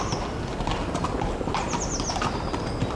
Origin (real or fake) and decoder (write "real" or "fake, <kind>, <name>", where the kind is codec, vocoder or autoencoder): real